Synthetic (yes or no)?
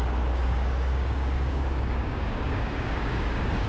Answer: yes